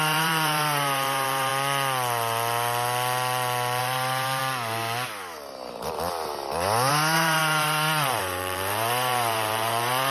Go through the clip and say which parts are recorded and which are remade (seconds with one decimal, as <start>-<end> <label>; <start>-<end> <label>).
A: 0.0-1.5 remade; 1.5-3.8 recorded; 3.8-4.4 remade; 4.4-6.9 recorded; 6.9-10.1 remade